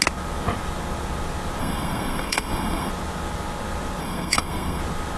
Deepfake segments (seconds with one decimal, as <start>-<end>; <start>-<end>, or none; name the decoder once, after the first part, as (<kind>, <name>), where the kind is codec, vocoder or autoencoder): 1.6-2.9 (codec, SNAC); 4.0-4.8